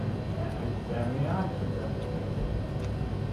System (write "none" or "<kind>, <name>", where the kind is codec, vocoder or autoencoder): none